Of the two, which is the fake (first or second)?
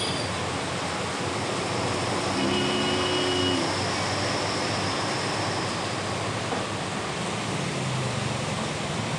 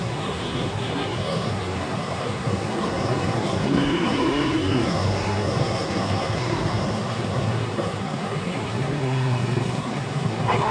second